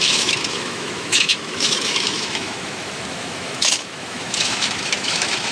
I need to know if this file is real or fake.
fake